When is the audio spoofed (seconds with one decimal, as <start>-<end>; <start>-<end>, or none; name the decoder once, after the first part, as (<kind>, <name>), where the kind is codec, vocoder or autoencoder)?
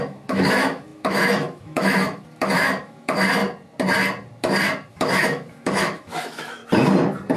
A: 0.0-3.4 (autoencoder, DAC-VAE); 4.9-6.6